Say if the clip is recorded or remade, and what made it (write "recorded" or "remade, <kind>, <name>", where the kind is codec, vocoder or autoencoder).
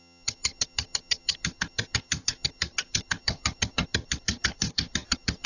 remade, vocoder, HiFi-GAN